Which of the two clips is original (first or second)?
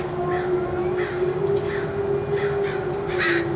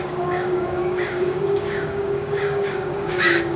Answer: first